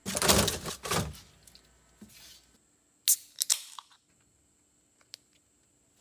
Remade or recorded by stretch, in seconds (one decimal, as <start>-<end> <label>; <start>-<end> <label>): 0.0-6.0 recorded